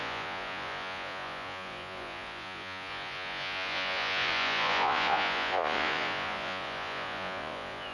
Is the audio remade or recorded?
remade